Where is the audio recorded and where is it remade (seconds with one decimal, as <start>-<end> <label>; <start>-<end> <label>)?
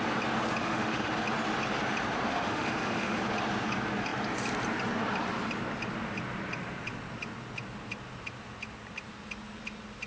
0.0-0.6 recorded; 0.6-1.1 remade; 1.1-2.3 recorded; 2.3-3.2 remade; 3.2-10.1 recorded